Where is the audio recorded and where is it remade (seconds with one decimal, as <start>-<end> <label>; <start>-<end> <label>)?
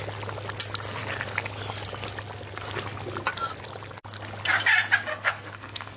0.0-5.1 recorded; 5.1-6.0 remade